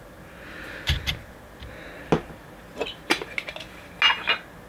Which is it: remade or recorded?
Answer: recorded